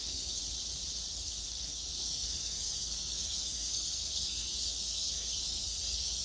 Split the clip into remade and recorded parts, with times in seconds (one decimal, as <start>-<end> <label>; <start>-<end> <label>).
0.0-0.4 remade; 0.4-1.1 recorded; 1.1-6.2 remade